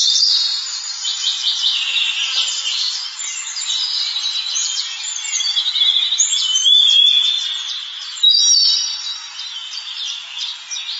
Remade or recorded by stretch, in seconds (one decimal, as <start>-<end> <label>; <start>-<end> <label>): 0.0-2.2 recorded; 2.2-3.6 remade; 3.6-4.6 recorded; 4.6-8.4 remade; 8.4-9.6 recorded; 9.6-10.5 remade; 10.5-11.0 recorded